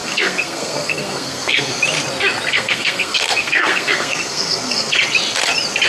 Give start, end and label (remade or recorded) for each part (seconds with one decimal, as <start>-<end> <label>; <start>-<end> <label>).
0.0-1.7 remade; 1.7-2.5 recorded; 2.5-4.9 remade; 4.9-5.9 recorded